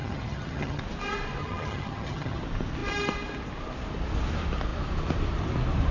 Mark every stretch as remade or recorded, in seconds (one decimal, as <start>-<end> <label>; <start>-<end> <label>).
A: 0.0-0.8 remade; 0.8-1.4 recorded; 1.4-2.4 remade; 2.4-5.9 recorded